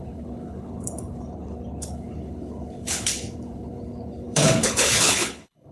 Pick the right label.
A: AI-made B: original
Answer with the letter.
A